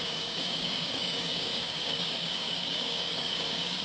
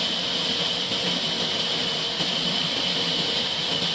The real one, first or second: second